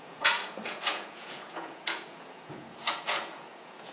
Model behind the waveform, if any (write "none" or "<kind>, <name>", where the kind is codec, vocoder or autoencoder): vocoder, Vocos